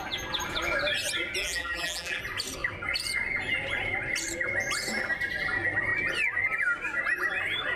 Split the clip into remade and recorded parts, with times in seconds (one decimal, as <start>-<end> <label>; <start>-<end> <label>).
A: 0.0-1.4 recorded; 1.4-2.2 remade; 2.2-7.8 recorded